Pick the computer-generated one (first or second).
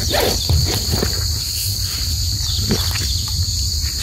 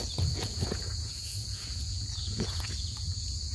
second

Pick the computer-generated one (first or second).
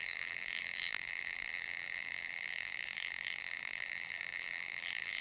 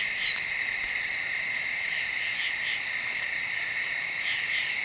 first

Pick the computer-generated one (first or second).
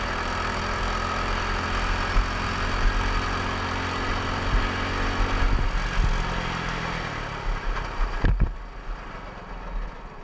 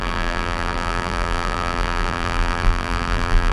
second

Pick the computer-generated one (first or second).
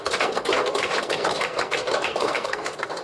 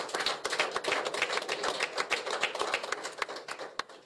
first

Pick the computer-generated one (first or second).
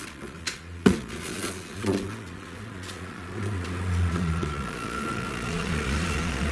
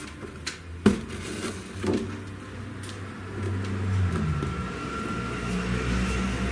first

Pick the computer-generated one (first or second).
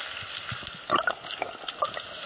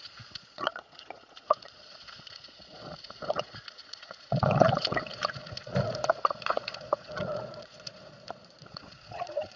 second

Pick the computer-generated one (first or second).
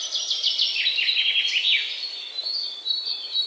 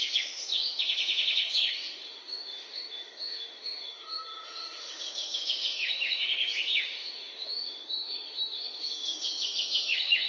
second